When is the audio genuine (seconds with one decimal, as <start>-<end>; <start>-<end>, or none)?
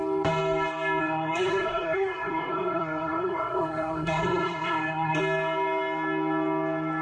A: 0.0-1.0; 5.2-7.0